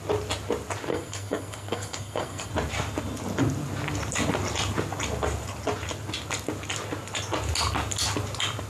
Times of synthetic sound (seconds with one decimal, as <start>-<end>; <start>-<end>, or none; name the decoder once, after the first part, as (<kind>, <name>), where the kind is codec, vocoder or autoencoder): 0.9-2.5 (codec, SNAC)